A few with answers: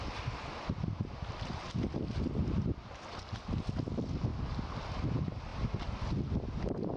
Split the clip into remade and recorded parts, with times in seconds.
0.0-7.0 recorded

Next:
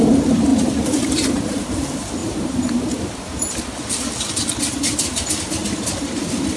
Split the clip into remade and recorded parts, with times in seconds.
0.0-0.5 recorded; 0.5-1.7 remade; 1.7-2.2 recorded; 2.2-3.6 remade; 3.6-5.6 recorded; 5.6-6.6 remade

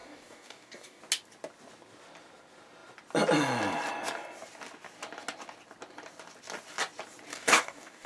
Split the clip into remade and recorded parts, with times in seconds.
0.0-1.0 remade; 1.0-7.3 recorded; 7.3-8.1 remade

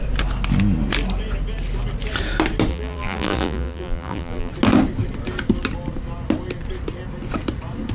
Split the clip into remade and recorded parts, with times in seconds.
0.0-2.7 recorded; 2.7-4.5 remade; 4.5-7.9 recorded

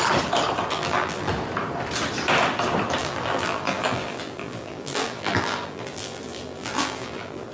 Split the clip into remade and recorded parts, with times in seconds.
0.0-0.7 recorded; 0.7-1.3 remade; 1.3-3.0 recorded; 3.0-7.5 remade

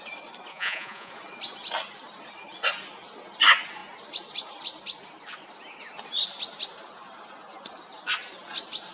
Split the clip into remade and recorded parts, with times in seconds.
0.0-0.5 recorded; 0.5-1.1 remade; 1.1-8.9 recorded

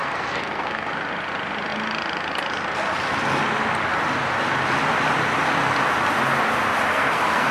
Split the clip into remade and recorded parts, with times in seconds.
0.0-0.9 remade; 0.9-6.9 recorded; 6.9-7.5 remade

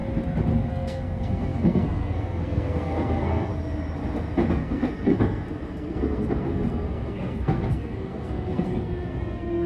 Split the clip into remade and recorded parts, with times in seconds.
0.0-0.7 recorded; 0.7-3.5 remade; 3.5-4.5 recorded; 4.5-9.7 remade